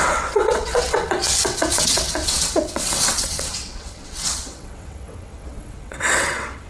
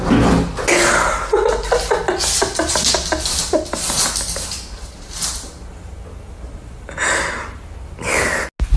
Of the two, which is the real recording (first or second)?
second